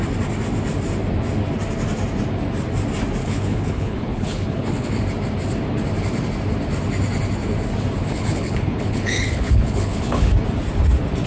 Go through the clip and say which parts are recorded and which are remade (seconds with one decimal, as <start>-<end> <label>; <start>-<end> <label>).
0.0-3.2 recorded; 3.2-5.0 remade; 5.0-8.0 recorded; 8.0-10.3 remade; 10.3-11.3 recorded